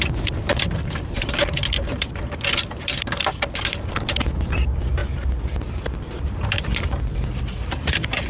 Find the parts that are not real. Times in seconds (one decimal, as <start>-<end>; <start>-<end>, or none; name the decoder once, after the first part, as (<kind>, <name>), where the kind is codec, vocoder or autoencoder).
0.0-5.0 (vocoder, BigVGAN v2); 5.6-8.3